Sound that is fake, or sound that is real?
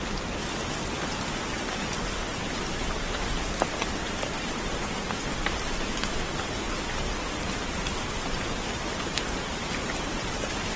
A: real